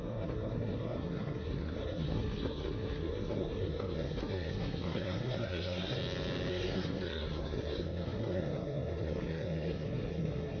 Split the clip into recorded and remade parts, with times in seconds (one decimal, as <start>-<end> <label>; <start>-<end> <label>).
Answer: 0.0-6.0 remade; 6.0-6.5 recorded; 6.5-10.6 remade